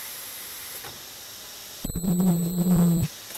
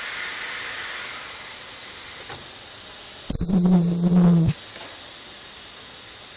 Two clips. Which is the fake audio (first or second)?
first